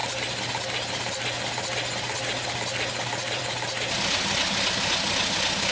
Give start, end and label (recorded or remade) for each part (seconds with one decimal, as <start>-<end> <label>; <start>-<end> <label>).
0.0-5.7 recorded